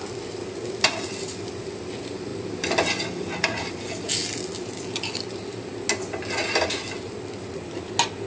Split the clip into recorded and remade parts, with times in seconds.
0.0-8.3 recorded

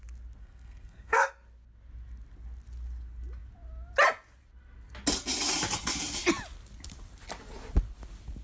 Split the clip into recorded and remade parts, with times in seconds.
0.0-0.4 recorded; 0.4-1.3 remade; 1.3-8.4 recorded